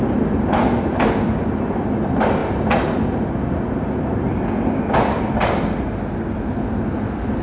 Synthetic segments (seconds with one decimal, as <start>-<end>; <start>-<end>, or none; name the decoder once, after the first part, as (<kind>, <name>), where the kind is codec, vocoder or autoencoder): none